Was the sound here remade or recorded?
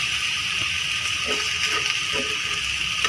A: recorded